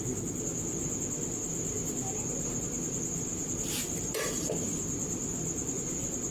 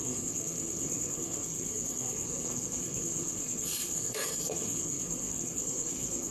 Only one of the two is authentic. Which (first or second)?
first